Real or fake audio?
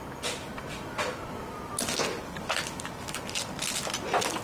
real